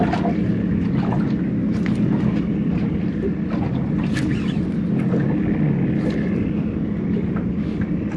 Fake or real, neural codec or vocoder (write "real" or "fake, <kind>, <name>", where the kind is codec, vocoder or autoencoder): real